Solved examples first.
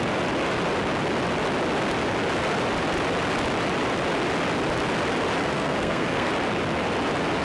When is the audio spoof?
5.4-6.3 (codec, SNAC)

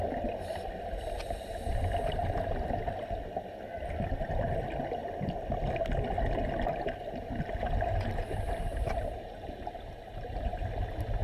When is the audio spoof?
8.7-10.7 (vocoder, BigVGAN v2)

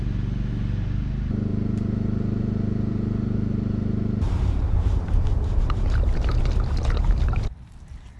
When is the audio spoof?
1.5-6.4 (vocoder, BigVGAN v2)

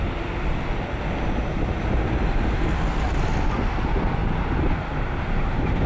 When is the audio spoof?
4.2-5.9 (vocoder, BigVGAN v2)

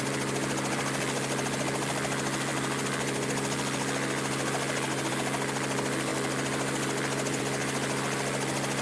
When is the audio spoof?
none

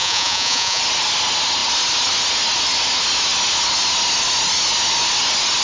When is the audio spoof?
0.0-0.8 (vocoder, Vocos)

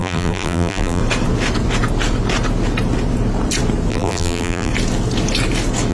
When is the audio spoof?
0.0-1.0 (vocoder, BigVGAN v2); 3.9-4.7

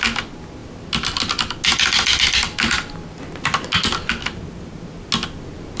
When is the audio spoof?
none